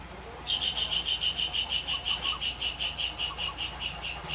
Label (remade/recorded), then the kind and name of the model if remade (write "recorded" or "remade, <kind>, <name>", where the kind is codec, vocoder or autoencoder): recorded